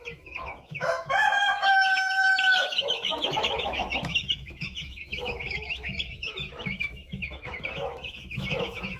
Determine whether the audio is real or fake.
fake